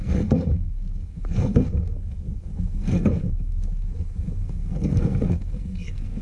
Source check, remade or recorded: remade